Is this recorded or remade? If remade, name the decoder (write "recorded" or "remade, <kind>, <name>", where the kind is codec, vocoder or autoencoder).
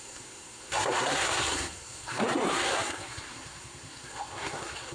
remade, codec, SNAC